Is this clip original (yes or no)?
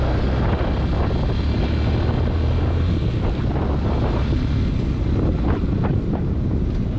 yes